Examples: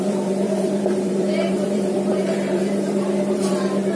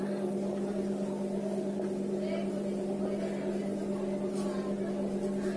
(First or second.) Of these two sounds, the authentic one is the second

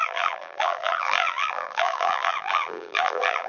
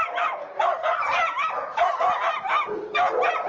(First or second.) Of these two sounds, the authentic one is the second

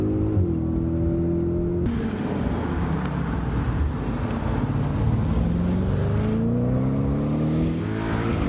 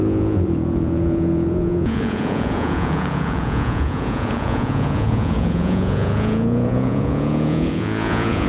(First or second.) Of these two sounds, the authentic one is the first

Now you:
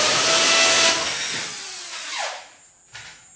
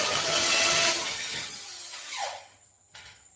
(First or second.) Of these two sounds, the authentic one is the first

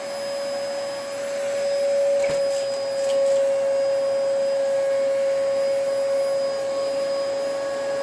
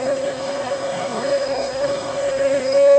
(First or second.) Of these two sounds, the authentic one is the first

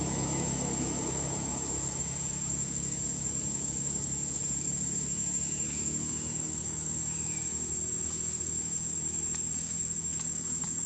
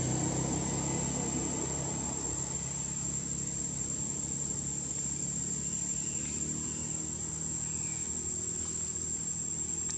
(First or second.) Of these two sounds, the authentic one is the second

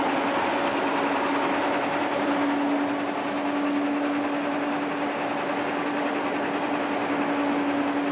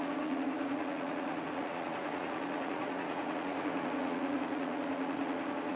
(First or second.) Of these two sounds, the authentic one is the first